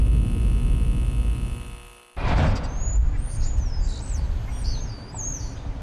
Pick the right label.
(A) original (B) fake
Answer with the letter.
A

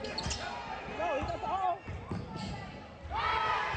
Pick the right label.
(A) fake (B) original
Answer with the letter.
B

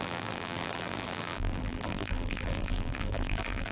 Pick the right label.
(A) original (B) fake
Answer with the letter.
B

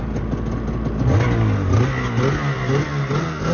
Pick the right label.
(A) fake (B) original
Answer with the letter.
B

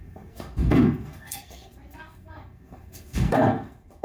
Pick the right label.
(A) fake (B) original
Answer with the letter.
A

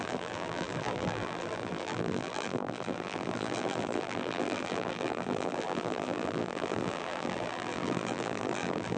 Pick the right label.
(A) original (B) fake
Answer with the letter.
B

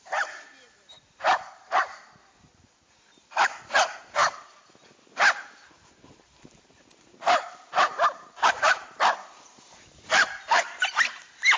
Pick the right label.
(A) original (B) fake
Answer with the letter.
B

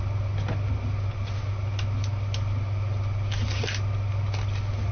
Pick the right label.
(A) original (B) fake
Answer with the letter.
A